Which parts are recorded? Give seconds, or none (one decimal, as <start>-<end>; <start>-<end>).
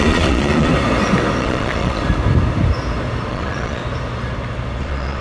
0.7-1.4; 2.0-3.3; 3.8-4.8